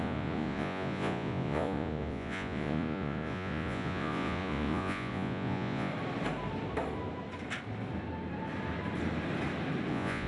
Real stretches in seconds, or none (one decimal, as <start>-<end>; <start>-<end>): 5.9-9.9

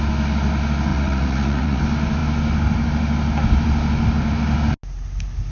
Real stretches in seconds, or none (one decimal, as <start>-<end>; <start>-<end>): 0.0-0.9; 1.8-5.5